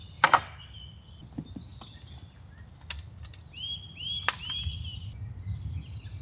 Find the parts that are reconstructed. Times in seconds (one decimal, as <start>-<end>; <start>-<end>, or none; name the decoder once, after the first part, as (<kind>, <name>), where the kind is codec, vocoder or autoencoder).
none